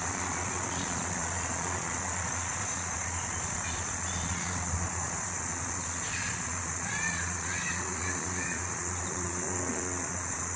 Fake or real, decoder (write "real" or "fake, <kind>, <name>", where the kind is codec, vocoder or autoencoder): fake, vocoder, Vocos